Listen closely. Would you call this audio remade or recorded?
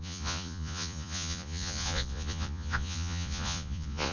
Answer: remade